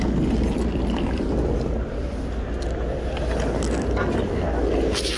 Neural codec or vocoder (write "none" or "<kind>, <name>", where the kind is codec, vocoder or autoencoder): none